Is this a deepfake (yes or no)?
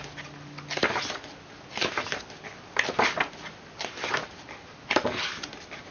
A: no